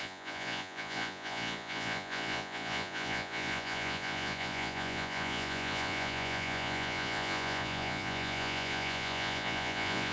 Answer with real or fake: fake